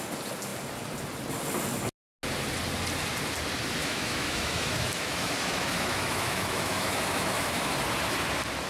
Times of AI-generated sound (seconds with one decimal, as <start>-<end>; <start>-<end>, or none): 3.8-7.7